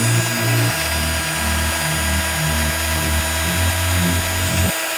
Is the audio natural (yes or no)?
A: yes